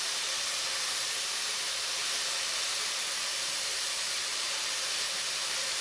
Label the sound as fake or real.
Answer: fake